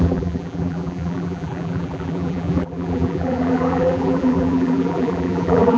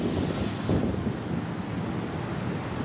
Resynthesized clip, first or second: first